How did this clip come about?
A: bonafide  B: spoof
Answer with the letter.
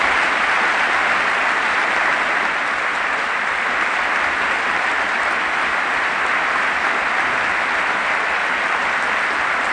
A